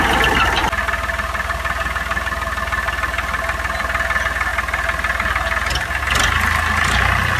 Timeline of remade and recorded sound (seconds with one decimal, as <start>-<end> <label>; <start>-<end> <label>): 0.0-7.4 recorded